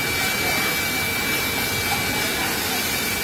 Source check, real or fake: real